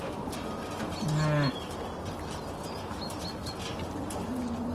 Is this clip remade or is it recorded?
recorded